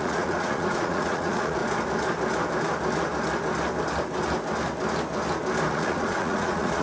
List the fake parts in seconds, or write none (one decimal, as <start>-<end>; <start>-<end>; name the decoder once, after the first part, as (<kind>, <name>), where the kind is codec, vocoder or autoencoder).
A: 0.0-1.6 (vocoder, Vocos); 5.7-6.8

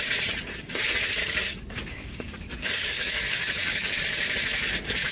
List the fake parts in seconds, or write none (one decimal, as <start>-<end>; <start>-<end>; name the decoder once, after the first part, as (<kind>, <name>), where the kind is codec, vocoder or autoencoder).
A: 1.2-4.0 (codec, DAC)

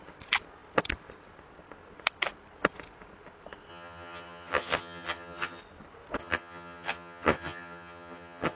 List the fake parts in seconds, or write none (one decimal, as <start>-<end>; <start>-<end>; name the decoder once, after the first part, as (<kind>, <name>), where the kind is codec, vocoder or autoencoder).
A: 3.7-5.6 (vocoder, HiFi-GAN); 6.2-8.6

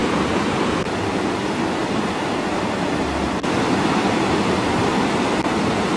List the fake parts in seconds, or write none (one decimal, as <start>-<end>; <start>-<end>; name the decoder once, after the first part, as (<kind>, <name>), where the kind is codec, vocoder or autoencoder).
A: 0.0-1.4 (vocoder, BigVGAN v2); 1.8-5.4

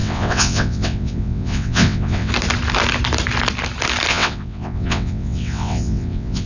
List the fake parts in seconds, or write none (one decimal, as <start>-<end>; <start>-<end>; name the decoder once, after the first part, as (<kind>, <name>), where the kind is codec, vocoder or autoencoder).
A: 0.0-2.3 (vocoder, WaveNeXt); 4.1-6.5

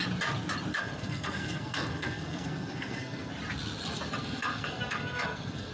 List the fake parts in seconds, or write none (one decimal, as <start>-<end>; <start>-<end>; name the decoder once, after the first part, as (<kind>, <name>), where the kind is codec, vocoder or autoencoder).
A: 0.7-3.3 (codec, SNAC); 4.2-5.7